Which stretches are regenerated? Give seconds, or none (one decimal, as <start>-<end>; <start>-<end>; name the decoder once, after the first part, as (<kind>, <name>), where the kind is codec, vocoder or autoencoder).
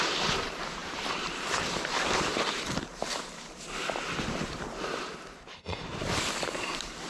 0.0-7.1 (vocoder, BigVGAN v2)